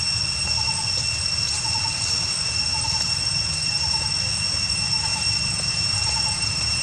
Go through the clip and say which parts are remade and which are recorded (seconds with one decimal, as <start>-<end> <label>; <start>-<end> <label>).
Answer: 0.0-2.7 recorded; 2.7-4.0 remade; 4.0-5.1 recorded; 5.1-6.8 remade